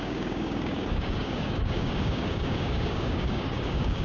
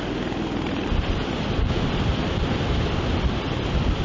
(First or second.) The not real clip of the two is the first